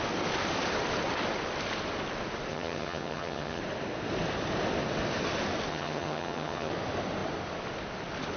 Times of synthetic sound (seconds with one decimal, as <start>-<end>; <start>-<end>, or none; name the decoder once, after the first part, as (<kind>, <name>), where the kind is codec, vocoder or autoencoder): 2.5-3.6 (vocoder, HiFi-GAN); 5.7-6.7